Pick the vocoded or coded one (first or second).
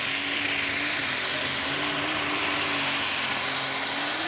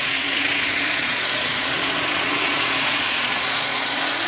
second